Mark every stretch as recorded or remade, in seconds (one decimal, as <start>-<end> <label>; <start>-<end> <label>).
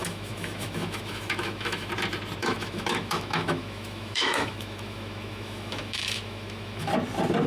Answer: 0.0-1.9 remade; 1.9-2.4 recorded; 2.4-6.9 remade; 6.9-7.5 recorded